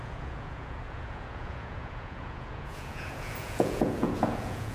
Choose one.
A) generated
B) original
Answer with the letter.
A